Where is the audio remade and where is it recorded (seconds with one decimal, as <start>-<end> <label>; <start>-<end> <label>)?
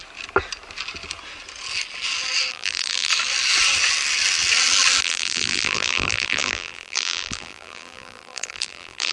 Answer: 0.0-2.5 recorded; 2.5-3.1 remade; 3.1-5.0 recorded; 5.0-9.1 remade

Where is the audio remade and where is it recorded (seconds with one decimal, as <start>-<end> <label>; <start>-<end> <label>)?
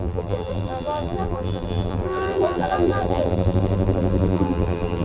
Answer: 0.0-5.0 remade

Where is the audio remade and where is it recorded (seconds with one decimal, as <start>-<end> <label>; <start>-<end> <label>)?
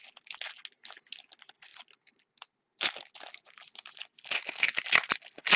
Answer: 0.0-5.6 recorded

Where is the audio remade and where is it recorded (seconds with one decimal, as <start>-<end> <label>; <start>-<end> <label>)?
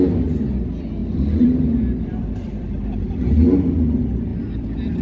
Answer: 0.0-1.0 recorded; 1.0-3.2 remade; 3.2-4.3 recorded; 4.3-5.0 remade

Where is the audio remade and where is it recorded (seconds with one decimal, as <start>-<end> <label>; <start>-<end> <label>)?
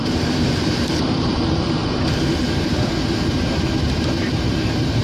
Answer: 0.0-5.0 remade